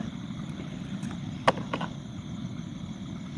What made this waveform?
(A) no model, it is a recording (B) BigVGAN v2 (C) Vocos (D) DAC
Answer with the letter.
A